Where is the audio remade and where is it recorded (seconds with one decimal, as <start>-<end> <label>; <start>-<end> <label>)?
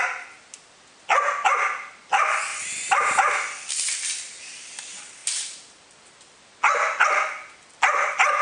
0.0-2.5 recorded; 2.5-3.3 remade; 3.3-8.4 recorded